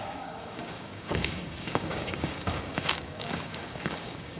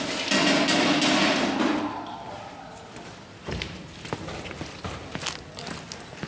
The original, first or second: second